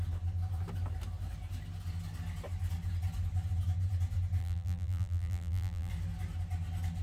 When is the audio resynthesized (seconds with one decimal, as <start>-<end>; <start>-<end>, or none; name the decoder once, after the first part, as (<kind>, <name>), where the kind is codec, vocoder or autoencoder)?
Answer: 4.4-5.9 (vocoder, BigVGAN v2)